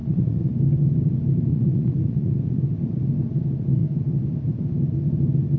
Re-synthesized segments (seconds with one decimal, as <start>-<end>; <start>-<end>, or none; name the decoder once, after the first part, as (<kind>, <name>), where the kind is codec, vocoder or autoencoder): 0.0-0.5 (vocoder, Vocos); 1.5-2.6